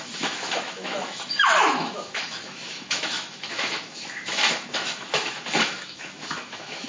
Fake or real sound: fake